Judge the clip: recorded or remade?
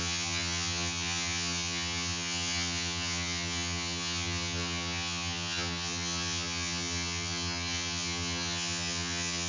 remade